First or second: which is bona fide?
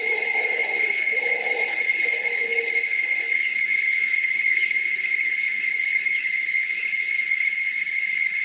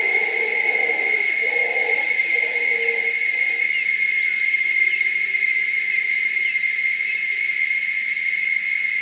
second